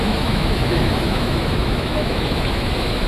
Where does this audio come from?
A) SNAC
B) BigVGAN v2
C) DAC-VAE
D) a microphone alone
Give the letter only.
C